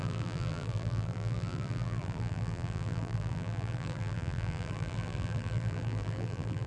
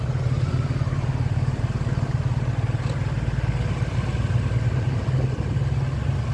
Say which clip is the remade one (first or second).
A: first